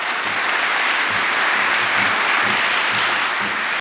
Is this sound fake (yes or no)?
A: no